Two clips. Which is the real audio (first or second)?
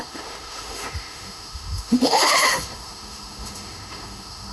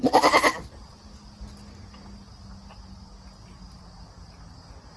second